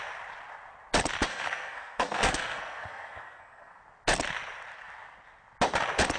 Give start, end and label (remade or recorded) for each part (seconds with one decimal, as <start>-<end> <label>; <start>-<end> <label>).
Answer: 0.0-1.3 recorded; 1.3-3.8 remade; 3.8-6.2 recorded